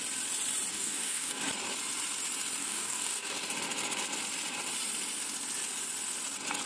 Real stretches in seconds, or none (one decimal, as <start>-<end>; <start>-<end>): 0.0-0.7; 1.4-2.6; 3.3-6.7